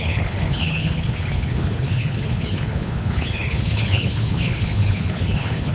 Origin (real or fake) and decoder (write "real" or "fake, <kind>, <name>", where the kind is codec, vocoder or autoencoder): fake, codec, HILCodec